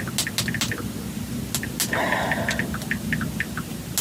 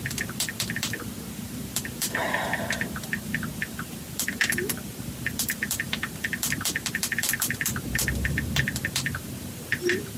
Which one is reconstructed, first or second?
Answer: second